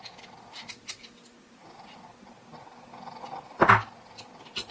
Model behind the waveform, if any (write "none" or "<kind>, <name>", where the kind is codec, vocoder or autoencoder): none